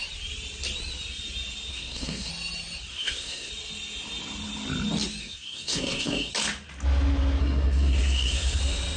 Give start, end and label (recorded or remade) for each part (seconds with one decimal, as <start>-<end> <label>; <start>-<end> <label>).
0.0-1.7 recorded; 1.7-2.3 remade; 2.3-2.9 recorded; 2.9-3.5 remade; 3.5-5.2 recorded; 5.2-6.3 remade; 6.3-7.4 recorded; 7.4-8.6 remade; 8.6-9.0 recorded